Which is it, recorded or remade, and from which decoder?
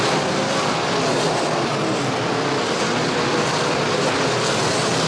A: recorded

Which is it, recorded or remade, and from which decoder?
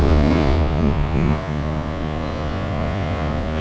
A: remade, vocoder, Vocos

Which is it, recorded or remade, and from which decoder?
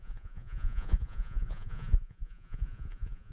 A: remade, vocoder, Vocos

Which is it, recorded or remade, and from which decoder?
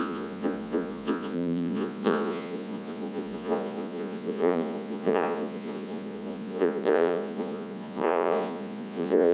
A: remade, vocoder, Vocos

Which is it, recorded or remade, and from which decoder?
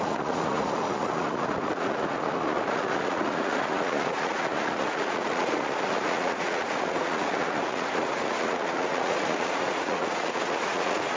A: remade, vocoder, Vocos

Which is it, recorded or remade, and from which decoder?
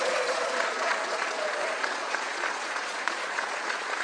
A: remade, vocoder, Vocos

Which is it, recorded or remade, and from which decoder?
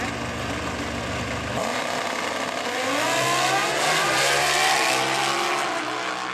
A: recorded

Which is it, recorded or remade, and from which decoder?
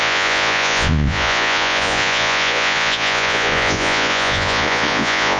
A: remade, vocoder, Vocos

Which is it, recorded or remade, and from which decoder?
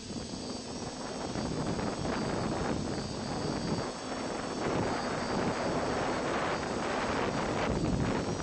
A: recorded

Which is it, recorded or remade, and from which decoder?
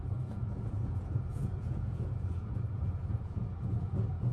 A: remade, vocoder, Vocos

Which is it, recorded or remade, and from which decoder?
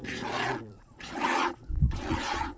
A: remade, vocoder, Vocos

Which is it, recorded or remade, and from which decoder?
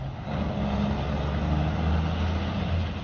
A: recorded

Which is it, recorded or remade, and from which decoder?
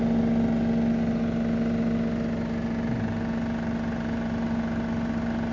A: recorded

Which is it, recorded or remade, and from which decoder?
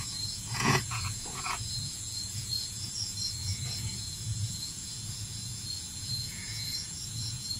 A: remade, vocoder, Vocos